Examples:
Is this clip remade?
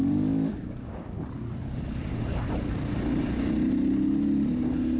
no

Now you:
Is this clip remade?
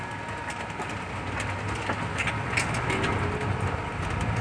no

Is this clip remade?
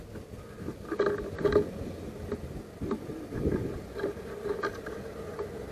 no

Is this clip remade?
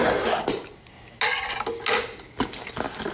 no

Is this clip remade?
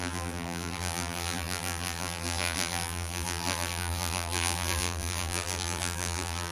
yes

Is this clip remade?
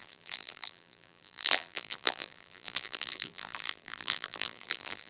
yes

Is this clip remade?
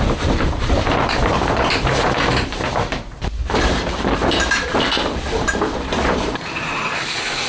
yes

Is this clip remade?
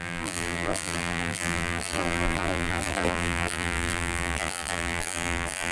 yes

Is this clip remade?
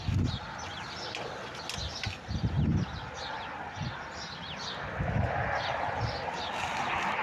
no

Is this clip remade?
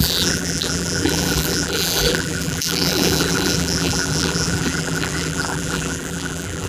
yes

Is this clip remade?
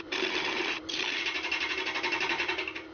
yes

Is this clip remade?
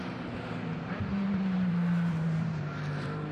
yes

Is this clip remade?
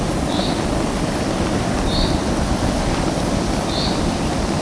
no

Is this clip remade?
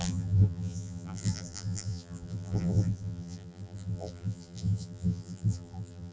yes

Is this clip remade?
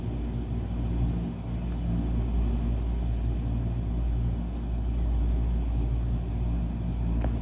no